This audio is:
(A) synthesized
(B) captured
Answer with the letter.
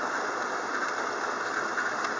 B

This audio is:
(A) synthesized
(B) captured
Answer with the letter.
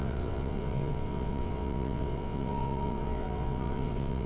A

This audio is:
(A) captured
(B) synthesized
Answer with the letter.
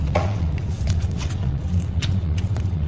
B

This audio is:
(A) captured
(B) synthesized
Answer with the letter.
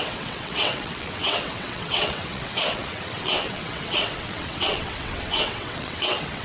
B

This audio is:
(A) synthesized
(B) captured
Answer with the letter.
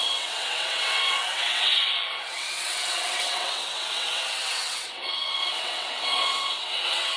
A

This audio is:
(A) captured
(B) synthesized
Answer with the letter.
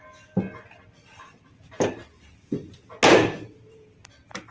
A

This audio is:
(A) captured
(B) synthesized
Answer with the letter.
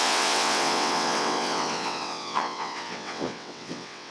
B